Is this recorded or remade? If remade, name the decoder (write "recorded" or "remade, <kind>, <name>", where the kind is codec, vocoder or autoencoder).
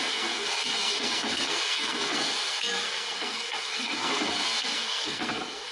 remade, codec, SNAC